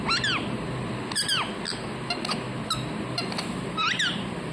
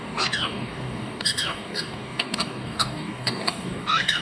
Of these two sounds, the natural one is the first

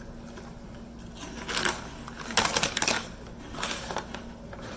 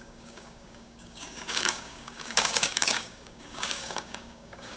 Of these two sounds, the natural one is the first